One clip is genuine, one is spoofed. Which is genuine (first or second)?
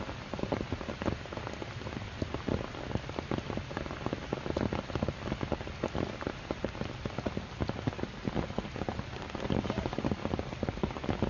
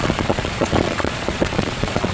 first